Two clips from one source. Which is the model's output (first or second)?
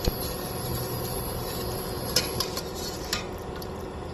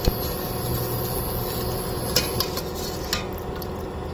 first